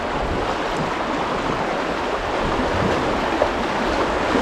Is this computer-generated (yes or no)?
no